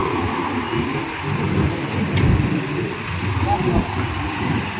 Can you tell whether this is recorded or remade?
recorded